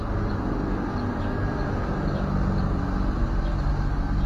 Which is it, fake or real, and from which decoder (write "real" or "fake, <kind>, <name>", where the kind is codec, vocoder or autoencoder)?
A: real